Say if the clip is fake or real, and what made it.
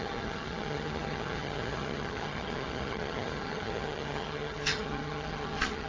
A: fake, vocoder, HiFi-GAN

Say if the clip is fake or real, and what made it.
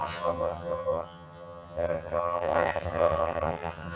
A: fake, vocoder, HiFi-GAN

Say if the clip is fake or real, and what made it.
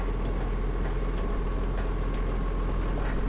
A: real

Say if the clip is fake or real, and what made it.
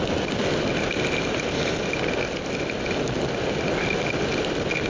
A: real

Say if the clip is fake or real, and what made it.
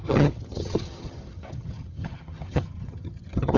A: fake, vocoder, HiFi-GAN